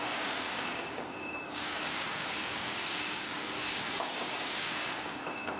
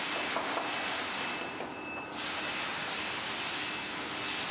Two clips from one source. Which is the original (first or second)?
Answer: second